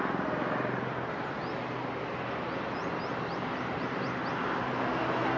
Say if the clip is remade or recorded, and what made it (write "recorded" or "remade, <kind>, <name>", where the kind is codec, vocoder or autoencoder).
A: recorded